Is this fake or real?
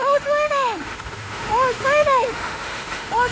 fake